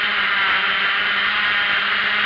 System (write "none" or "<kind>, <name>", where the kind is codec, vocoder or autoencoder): none